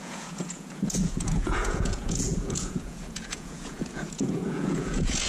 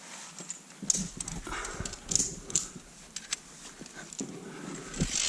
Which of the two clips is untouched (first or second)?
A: second